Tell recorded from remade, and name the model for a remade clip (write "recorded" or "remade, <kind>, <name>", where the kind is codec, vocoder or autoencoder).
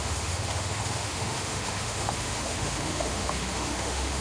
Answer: remade, autoencoder, DAC-VAE